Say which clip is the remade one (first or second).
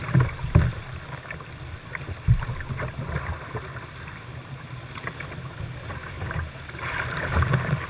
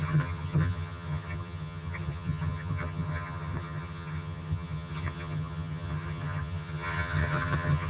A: second